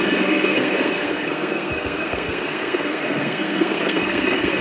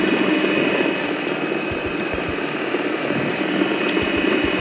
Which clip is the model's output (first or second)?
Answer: first